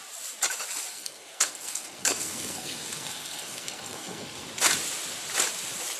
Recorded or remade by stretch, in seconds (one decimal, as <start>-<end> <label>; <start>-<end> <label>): 0.0-0.9 recorded; 0.9-4.5 remade; 4.5-6.0 recorded